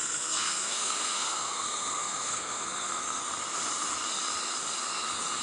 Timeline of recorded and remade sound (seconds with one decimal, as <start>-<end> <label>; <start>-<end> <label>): 0.0-3.2 remade; 3.2-5.4 recorded